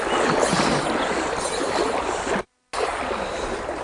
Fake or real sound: real